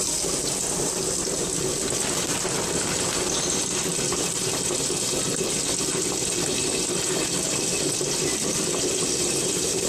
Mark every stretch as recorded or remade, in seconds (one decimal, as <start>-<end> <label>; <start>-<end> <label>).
0.0-9.9 recorded